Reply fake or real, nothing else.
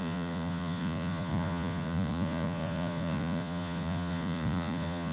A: fake